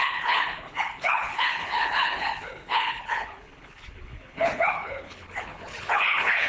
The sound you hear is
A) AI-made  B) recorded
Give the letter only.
A